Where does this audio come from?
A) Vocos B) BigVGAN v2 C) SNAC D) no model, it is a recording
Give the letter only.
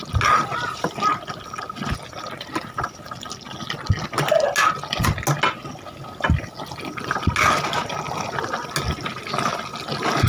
D